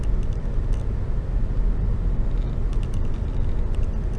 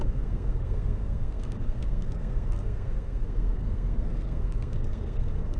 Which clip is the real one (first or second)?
first